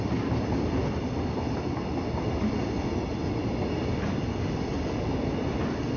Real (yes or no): yes